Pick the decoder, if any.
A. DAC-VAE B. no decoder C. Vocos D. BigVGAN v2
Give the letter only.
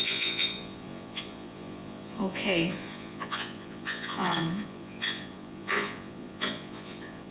C